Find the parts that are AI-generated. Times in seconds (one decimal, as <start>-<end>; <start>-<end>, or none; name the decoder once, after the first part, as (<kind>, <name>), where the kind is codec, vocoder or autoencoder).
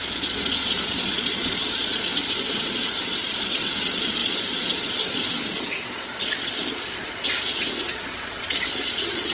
0.0-9.3 (vocoder, Vocos)